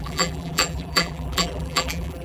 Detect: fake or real fake